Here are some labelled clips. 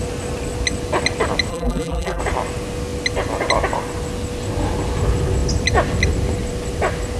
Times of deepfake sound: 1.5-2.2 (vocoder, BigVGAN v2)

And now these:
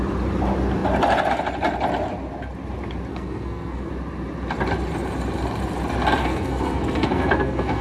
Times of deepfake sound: 3.1-3.9 (codec, SNAC); 6.2-7.8

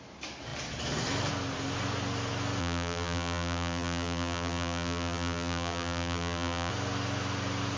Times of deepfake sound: 2.6-6.7 (vocoder, BigVGAN v2)

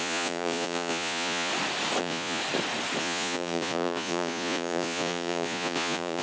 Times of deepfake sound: 0.0-1.5 (vocoder, Vocos); 2.0-2.4; 3.0-6.2

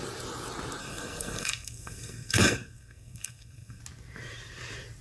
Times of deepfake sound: 0.8-3.8 (codec, SNAC)

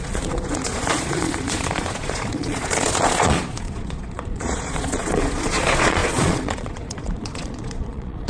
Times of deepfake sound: 0.0-8.3 (vocoder, Vocos)